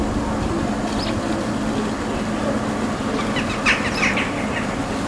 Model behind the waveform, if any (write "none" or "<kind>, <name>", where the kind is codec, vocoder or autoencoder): none